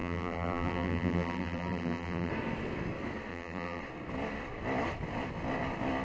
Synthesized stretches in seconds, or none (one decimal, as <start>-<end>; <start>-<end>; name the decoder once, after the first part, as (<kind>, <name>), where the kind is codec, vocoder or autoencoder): 0.0-2.3 (vocoder, BigVGAN v2); 3.3-3.8